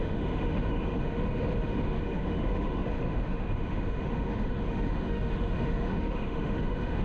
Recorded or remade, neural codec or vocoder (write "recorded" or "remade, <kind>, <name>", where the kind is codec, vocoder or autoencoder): remade, autoencoder, DAC-VAE